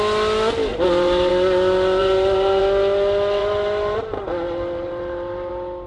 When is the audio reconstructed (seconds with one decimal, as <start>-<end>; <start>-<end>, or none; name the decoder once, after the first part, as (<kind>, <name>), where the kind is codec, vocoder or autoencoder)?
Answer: 0.7-1.3 (vocoder, BigVGAN v2); 2.0-2.6; 3.4-5.5